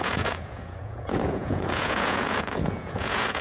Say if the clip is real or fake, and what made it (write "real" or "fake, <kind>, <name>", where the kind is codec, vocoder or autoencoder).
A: fake, vocoder, Vocos